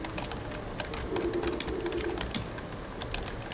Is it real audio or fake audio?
real